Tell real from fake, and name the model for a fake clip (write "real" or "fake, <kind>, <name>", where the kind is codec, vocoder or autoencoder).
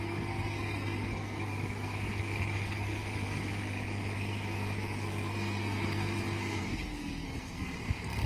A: fake, codec, SNAC